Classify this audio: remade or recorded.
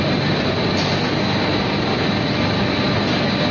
recorded